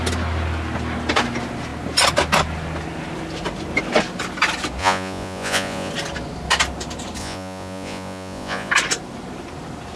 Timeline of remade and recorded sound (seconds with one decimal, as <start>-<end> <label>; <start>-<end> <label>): 0.0-4.8 recorded; 4.8-5.9 remade; 5.9-7.2 recorded; 7.2-8.7 remade; 8.7-10.0 recorded